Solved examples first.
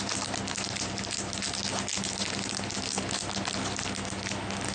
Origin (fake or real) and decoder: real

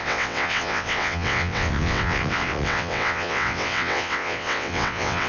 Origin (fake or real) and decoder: fake, vocoder, WaveNeXt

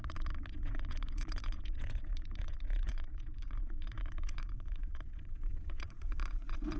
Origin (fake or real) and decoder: fake, vocoder, WaveNeXt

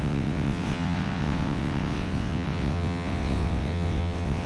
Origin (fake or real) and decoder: fake, vocoder, WaveNeXt